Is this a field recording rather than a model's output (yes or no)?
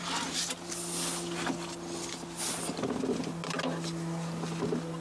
yes